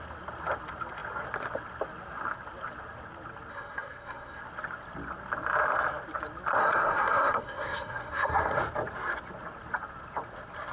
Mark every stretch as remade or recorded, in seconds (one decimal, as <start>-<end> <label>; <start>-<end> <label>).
0.0-3.5 recorded; 3.5-4.4 remade; 4.4-6.6 recorded; 6.6-8.6 remade; 8.6-10.7 recorded